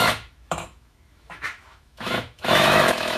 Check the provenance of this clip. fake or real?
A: fake